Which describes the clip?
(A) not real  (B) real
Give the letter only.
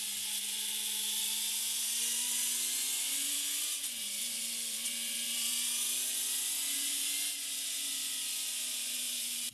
A